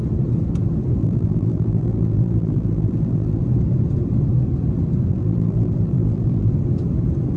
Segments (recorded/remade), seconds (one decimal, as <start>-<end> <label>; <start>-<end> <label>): 0.0-1.0 recorded; 1.0-3.4 remade; 3.4-5.1 recorded; 5.1-6.5 remade; 6.5-7.4 recorded